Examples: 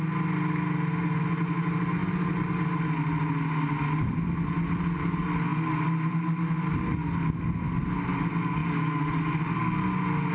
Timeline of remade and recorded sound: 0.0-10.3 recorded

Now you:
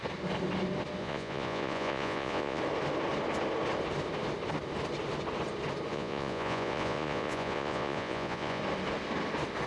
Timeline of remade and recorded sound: 0.0-1.0 recorded; 1.0-2.6 remade; 2.6-5.9 recorded; 5.9-8.6 remade; 8.6-9.7 recorded

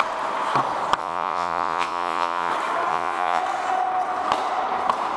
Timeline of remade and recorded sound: 0.0-1.0 recorded; 1.0-2.5 remade; 2.5-2.9 recorded; 2.9-3.4 remade; 3.4-5.2 recorded

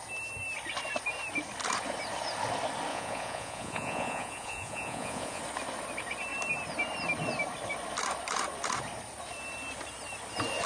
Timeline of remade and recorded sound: 0.0-2.9 recorded; 2.9-5.4 remade; 5.4-10.7 recorded

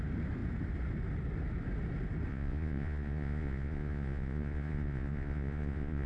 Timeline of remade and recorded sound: 0.0-2.3 recorded; 2.3-6.1 remade

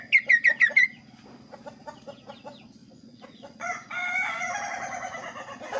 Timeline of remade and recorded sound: 0.0-2.8 recorded; 2.8-4.4 remade; 4.4-5.8 recorded